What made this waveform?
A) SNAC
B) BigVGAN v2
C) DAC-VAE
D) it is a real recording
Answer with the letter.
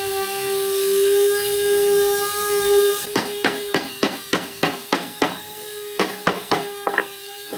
A